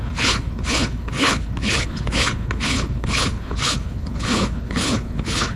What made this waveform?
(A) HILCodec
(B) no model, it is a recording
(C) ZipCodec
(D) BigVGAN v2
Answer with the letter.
A